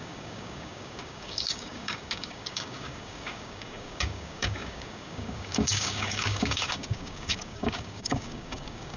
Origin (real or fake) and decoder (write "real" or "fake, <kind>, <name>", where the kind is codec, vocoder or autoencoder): fake, codec, DAC